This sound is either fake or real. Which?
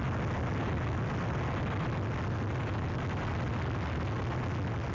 real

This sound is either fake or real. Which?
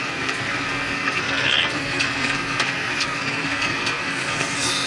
fake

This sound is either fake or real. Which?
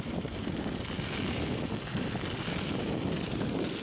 real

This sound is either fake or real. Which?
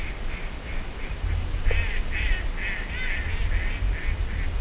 real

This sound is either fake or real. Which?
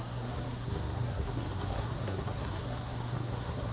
fake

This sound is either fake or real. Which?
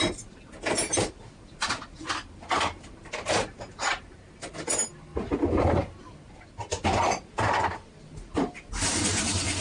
real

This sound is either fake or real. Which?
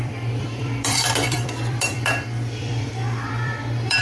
fake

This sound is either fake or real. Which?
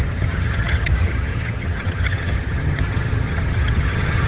fake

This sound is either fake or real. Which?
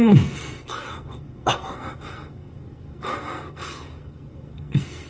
fake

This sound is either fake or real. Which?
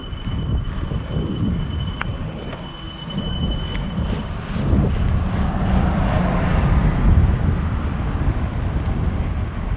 fake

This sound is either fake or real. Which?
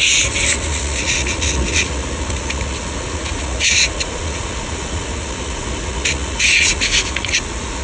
fake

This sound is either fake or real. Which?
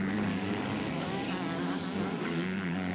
fake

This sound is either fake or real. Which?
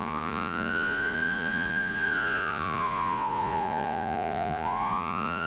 fake